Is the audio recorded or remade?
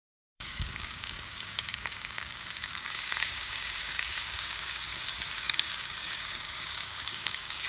remade